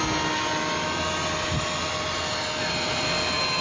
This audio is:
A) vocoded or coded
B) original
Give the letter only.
B